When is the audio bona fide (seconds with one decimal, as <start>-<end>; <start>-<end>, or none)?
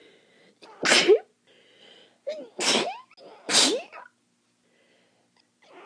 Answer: 0.0-5.9